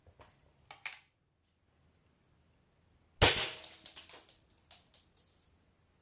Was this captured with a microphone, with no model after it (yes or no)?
yes